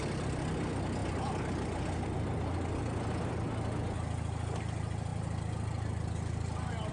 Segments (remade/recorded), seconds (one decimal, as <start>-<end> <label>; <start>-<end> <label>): 0.0-6.9 recorded